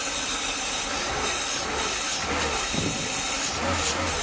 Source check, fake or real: real